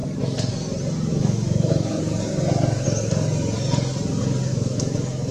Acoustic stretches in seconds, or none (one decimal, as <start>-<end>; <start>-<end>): 0.0-1.1; 2.1-4.5